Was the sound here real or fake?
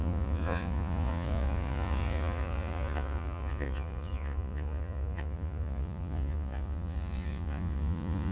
fake